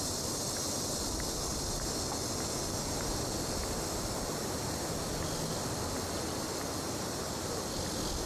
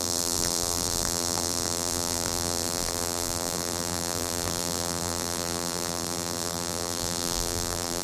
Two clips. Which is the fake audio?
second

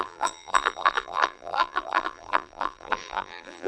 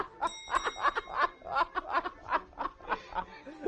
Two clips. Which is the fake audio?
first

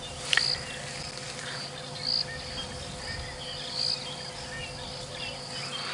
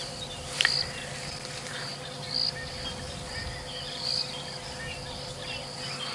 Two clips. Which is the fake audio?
second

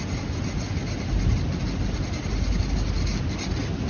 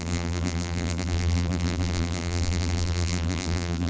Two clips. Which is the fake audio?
second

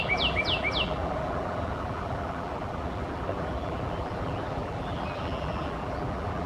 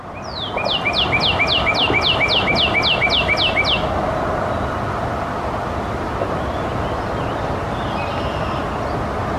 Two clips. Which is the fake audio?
first